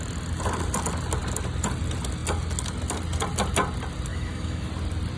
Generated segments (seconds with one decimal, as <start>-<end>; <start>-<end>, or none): 4.1-4.7